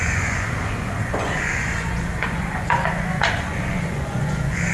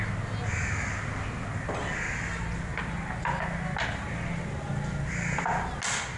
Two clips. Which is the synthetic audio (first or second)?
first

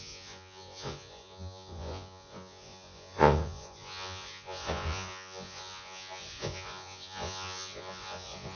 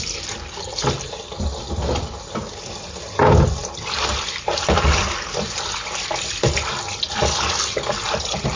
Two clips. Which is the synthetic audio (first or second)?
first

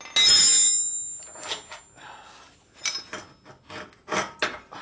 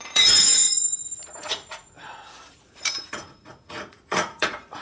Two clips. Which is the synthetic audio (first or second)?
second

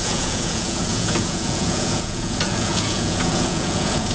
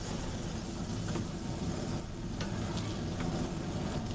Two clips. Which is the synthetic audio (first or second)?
first